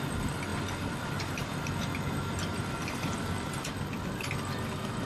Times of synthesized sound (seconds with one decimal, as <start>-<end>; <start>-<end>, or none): 2.5-3.7